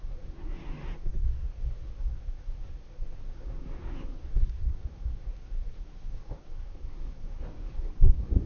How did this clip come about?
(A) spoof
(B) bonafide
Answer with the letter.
A